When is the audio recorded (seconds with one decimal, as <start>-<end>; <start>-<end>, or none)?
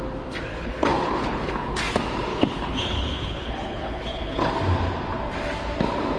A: 0.0-0.5; 1.8-2.3; 4.5-6.2